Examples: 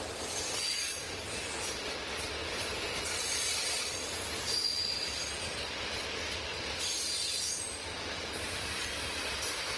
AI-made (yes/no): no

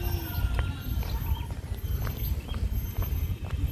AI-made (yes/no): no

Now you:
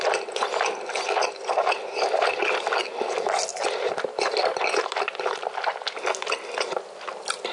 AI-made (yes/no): no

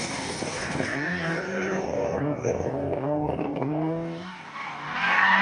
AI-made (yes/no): yes